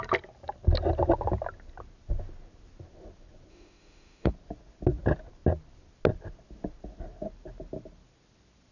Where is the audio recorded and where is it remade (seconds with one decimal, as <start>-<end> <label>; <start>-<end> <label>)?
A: 0.0-3.5 recorded; 3.5-4.3 remade; 4.3-8.7 recorded